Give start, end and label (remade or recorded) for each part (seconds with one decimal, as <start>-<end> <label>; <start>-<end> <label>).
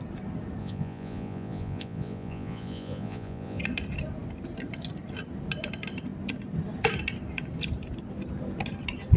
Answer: 0.0-0.6 recorded; 0.6-3.6 remade; 3.6-9.2 recorded